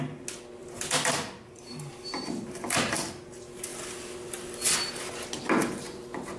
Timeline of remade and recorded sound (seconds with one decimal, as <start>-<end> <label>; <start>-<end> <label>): 0.0-0.6 recorded; 0.6-2.5 remade; 2.5-6.4 recorded